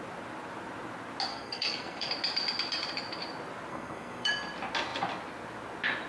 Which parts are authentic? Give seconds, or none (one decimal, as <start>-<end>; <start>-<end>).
0.0-1.3; 2.1-3.7; 4.3-6.1